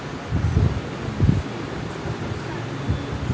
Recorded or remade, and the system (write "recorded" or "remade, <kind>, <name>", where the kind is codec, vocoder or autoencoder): recorded